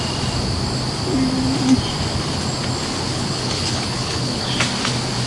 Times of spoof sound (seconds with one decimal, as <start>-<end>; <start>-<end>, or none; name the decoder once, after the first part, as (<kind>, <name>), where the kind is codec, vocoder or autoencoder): 3.1-4.5 (codec, HILCodec)